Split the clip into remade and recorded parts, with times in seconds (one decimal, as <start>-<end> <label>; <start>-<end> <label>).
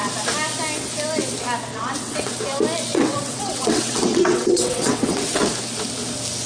0.0-1.7 recorded; 1.7-2.3 remade; 2.3-2.9 recorded; 2.9-5.4 remade; 5.4-6.5 recorded